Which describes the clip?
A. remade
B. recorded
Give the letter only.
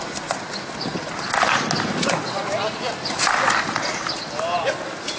B